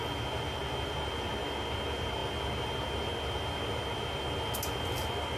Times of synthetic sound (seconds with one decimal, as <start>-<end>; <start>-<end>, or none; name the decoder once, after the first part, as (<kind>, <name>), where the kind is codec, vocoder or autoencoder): none